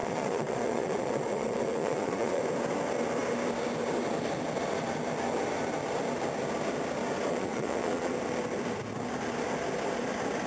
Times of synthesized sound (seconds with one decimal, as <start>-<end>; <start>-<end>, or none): 0.0-2.4; 7.3-8.1